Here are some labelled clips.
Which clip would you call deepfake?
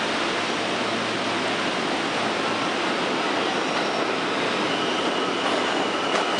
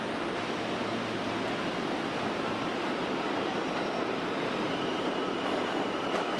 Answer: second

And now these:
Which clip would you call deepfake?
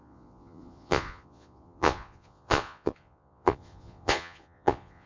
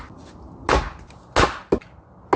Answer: first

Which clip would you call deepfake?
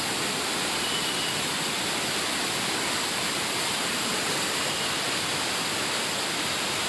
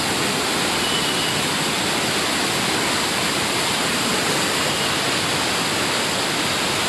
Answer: first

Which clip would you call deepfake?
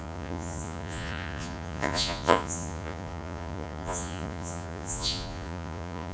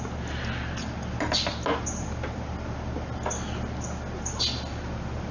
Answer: first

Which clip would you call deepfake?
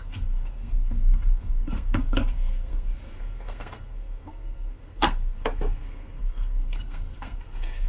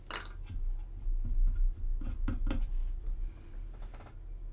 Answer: first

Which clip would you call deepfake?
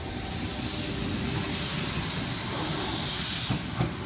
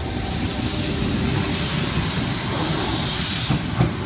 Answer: second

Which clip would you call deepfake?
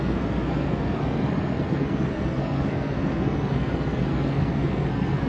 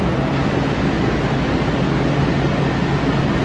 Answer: first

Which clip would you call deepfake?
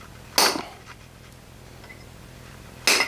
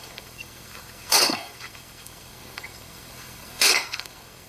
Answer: second